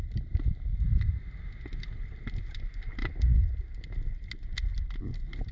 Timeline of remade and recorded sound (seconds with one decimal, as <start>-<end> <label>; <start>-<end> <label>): 0.0-5.5 recorded

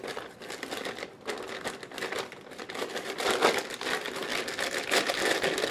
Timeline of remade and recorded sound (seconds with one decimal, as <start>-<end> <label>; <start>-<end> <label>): 0.0-5.7 recorded

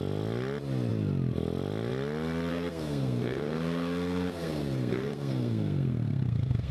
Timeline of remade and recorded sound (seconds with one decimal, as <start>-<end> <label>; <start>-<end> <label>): 0.0-2.5 recorded; 2.5-6.7 remade